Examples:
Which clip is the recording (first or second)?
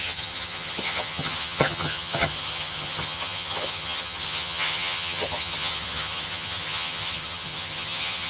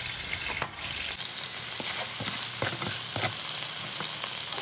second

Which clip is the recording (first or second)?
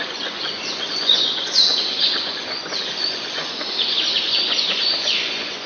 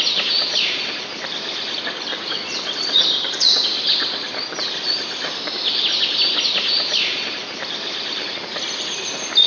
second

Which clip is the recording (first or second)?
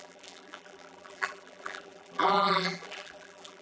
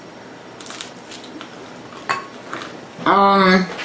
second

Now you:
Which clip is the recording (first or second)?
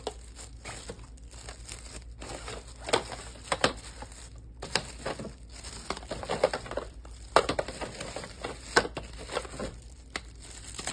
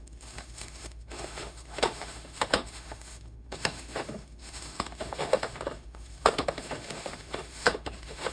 first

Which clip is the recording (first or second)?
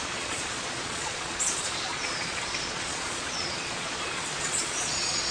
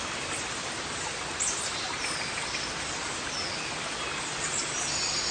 second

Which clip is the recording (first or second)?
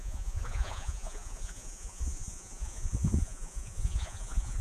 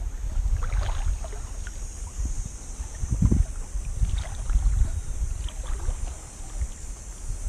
second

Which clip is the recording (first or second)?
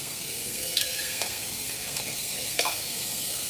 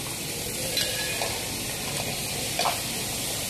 second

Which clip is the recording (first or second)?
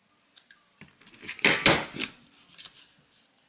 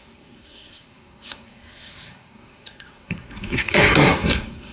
first